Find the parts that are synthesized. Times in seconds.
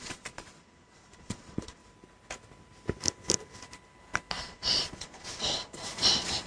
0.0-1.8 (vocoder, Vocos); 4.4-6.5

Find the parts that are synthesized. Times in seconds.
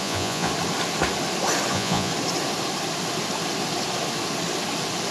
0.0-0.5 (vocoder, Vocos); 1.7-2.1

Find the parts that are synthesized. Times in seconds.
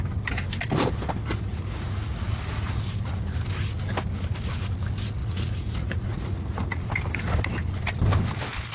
1.2-2.8 (vocoder, Vocos); 5.2-6.9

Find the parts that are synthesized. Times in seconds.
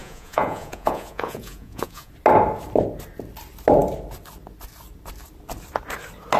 0.0-2.1 (vocoder, Vocos)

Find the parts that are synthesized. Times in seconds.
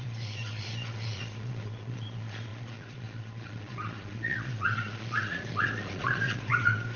0.0-7.0 (vocoder, Vocos)